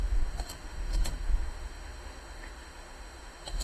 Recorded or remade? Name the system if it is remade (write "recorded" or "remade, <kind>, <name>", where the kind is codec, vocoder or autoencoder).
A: remade, autoencoder, DAC-VAE